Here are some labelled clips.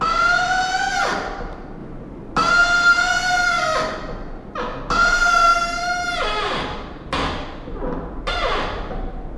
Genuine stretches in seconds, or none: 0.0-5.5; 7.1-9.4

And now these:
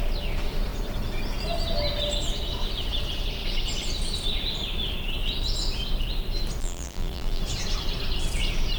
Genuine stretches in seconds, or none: 0.0-6.6; 7.4-8.8

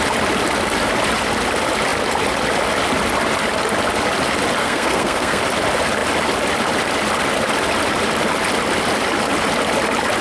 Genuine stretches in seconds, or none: 0.0-4.6; 5.4-10.2